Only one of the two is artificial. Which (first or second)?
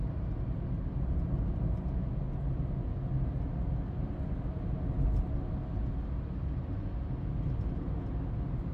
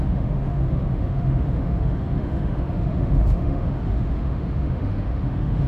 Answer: second